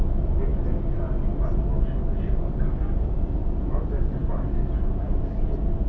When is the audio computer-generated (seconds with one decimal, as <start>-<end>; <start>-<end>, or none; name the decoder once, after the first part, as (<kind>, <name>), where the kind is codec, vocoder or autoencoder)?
none

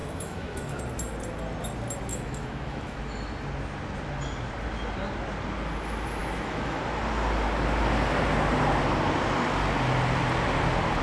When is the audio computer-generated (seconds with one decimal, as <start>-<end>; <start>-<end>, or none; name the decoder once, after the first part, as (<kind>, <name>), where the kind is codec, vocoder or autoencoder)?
0.0-0.8 (autoencoder, DAC-VAE); 2.1-3.0; 6.2-6.8

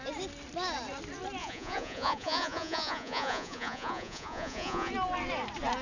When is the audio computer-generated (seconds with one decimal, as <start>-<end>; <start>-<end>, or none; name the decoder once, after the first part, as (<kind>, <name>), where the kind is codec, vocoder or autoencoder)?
1.4-4.9 (vocoder, Vocos)

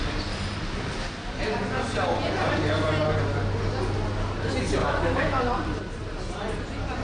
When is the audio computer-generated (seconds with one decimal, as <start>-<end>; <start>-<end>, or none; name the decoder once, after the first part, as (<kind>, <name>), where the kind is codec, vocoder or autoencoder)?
4.8-5.4 (autoencoder, DAC-VAE)

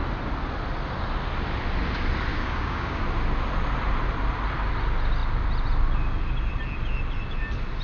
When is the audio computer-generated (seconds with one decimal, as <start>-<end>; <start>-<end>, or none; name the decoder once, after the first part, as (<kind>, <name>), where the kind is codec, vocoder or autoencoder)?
2.3-3.0 (codec, DAC)

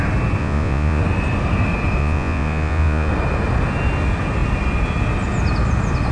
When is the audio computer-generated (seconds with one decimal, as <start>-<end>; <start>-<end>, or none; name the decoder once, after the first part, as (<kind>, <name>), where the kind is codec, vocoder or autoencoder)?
0.4-1.0 (vocoder, Vocos); 2.0-3.1

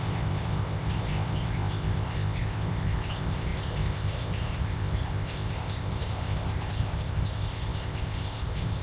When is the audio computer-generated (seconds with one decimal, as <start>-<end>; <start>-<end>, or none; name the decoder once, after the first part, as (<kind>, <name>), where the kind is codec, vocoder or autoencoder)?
0.0-8.8 (codec, ZipCodec)